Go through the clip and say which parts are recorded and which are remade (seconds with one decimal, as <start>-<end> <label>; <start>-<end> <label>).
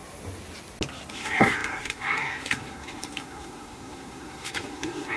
0.0-1.1 recorded; 1.1-5.2 remade